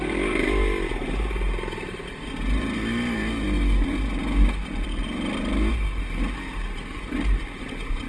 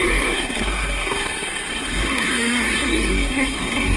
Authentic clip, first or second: first